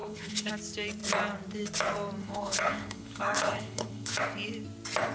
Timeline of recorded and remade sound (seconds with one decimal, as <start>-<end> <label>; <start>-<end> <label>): 0.0-0.5 remade; 0.5-2.2 recorded; 2.2-4.2 remade; 4.2-5.1 recorded